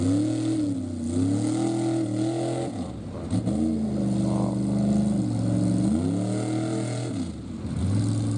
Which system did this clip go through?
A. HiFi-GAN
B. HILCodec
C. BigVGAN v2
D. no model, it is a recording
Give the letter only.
D